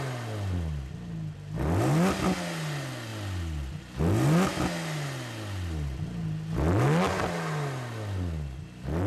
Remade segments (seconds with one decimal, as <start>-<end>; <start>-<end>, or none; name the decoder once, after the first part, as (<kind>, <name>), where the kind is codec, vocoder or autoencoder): none